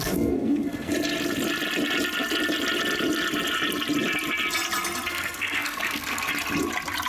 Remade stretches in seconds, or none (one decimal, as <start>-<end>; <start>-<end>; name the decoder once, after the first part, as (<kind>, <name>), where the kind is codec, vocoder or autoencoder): 0.0-0.9 (codec, SNAC); 5.1-6.3